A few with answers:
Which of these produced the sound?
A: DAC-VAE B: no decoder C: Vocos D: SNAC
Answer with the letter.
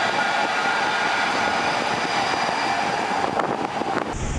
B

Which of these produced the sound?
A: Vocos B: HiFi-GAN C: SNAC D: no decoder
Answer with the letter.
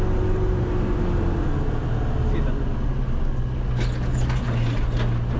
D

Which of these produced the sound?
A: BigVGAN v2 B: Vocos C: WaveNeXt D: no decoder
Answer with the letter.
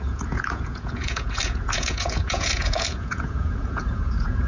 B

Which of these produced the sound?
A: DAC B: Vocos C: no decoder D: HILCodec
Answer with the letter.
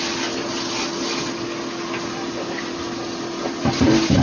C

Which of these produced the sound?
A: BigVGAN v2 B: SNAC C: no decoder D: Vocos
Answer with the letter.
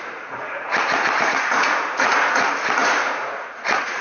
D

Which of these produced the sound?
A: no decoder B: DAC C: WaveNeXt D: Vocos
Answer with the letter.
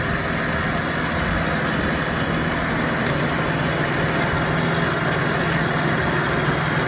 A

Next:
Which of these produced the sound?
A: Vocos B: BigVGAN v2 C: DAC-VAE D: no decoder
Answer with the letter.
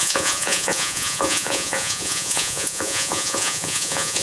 A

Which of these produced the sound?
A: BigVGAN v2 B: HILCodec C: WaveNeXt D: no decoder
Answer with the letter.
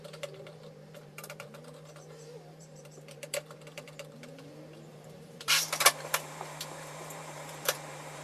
A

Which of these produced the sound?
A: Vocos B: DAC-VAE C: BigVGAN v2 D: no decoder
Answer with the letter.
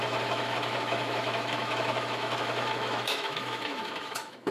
B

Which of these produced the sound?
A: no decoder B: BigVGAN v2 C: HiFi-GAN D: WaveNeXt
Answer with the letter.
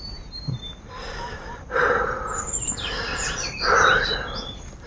A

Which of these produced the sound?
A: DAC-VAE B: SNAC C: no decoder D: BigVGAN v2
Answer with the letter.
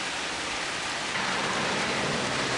C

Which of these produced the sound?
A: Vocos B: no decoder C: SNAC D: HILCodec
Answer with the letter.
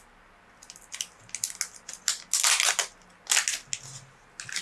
B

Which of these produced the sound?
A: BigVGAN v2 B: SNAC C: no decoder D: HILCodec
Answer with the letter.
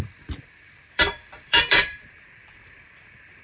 A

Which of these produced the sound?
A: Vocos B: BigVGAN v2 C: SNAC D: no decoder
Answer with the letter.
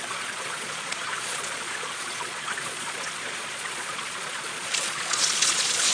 A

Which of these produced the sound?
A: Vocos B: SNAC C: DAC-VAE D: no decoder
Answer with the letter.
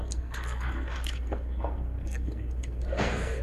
B